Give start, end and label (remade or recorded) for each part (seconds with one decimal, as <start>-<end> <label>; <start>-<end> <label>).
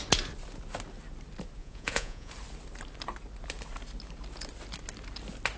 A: 0.0-1.6 recorded; 1.6-2.3 remade; 2.3-5.6 recorded